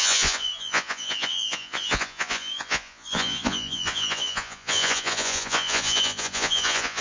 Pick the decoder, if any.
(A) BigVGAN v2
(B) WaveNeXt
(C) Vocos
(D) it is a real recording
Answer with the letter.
C